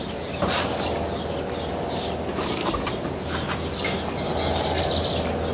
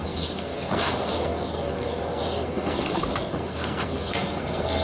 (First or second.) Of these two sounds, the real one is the first